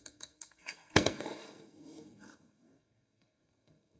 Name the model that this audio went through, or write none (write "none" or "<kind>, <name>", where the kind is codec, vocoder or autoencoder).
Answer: codec, SNAC